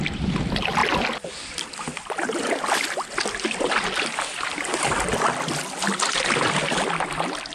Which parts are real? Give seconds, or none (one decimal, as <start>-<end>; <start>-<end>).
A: 0.0-7.5